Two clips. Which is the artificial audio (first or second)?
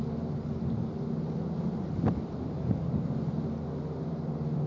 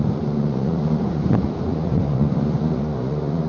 second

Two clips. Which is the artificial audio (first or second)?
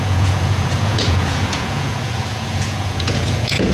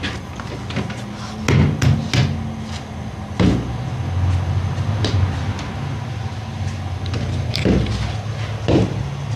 first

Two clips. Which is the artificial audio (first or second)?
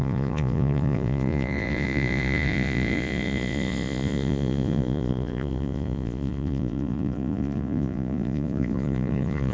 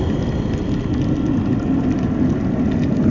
first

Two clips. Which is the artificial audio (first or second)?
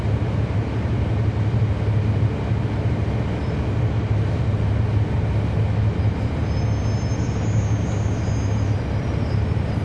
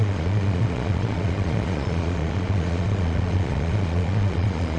second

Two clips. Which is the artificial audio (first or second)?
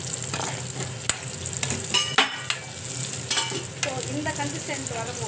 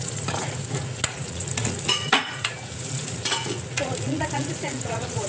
second